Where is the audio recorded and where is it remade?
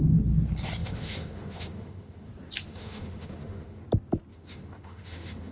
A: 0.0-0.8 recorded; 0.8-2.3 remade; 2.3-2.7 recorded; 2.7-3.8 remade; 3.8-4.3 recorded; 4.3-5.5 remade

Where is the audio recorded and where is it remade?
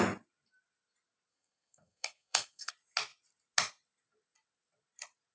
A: 0.0-1.3 recorded; 1.3-2.7 remade; 2.7-5.3 recorded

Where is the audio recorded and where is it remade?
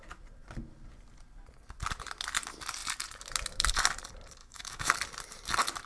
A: 0.0-4.4 recorded; 4.4-4.9 remade; 4.9-5.9 recorded